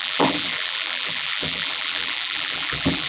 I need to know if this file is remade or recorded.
remade